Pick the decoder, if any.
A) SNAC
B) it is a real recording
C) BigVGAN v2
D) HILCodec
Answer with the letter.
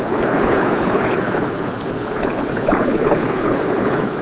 D